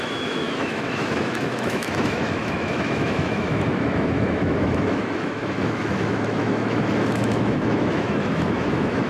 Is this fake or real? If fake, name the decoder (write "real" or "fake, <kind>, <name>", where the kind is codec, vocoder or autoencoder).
fake, autoencoder, DAC-VAE